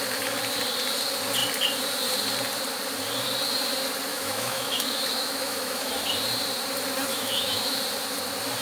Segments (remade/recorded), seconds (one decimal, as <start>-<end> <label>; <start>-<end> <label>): 0.0-4.1 recorded; 4.1-5.9 remade; 5.9-7.1 recorded; 7.1-7.8 remade; 7.8-8.6 recorded